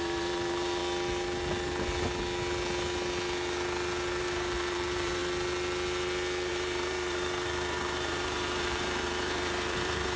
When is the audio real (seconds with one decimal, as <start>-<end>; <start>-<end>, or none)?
0.8-4.2; 5.2-6.5